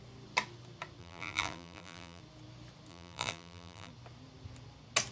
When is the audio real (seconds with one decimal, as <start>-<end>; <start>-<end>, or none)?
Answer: 0.0-1.0; 2.2-2.9; 3.9-5.1